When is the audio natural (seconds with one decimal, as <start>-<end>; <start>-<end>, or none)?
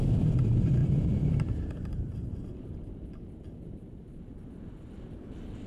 0.0-0.8; 4.2-5.7